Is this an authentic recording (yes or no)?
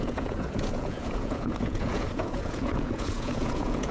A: no